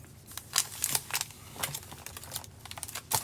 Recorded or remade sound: recorded